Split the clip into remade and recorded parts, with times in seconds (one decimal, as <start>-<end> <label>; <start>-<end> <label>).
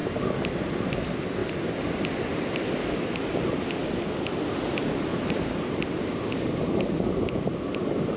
0.0-1.4 recorded; 1.4-2.1 remade; 2.1-5.1 recorded; 5.1-6.8 remade; 6.8-8.2 recorded